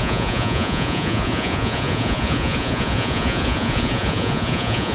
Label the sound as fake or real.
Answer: fake